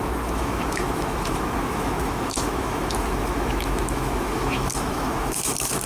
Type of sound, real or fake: fake